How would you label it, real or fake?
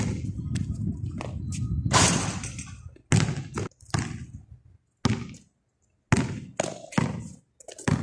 real